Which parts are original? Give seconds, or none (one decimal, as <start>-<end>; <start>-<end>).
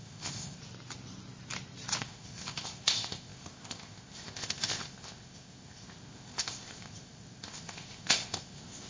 0.6-2.0